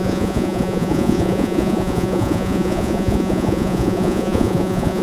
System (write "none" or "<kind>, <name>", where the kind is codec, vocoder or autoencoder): vocoder, Vocos